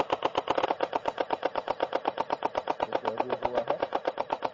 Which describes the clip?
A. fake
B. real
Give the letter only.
B